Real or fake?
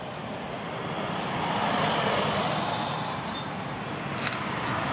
real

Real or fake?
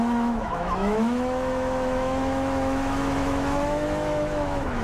fake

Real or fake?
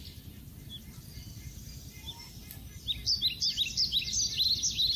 real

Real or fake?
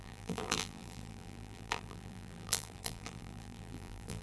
fake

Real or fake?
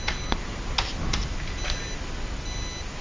real